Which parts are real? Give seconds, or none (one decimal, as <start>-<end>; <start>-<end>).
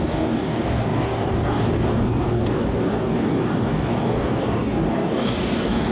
none